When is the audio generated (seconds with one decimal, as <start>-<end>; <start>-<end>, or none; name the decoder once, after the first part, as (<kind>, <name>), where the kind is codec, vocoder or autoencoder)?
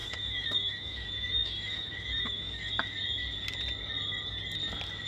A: 0.0-2.7 (autoencoder, DAC-VAE)